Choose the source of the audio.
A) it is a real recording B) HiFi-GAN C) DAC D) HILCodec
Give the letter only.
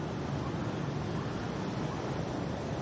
A